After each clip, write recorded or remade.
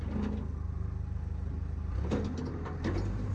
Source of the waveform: recorded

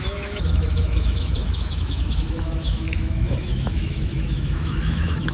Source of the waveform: remade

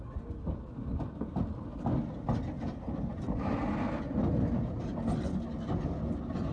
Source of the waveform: recorded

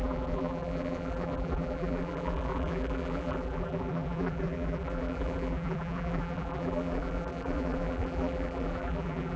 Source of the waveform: remade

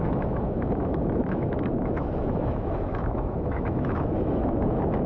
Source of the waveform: remade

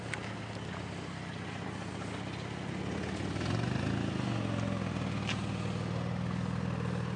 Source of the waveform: recorded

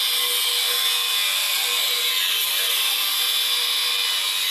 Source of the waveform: recorded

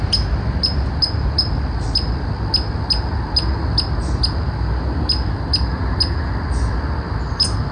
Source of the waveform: recorded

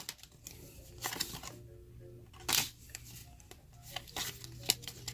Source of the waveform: recorded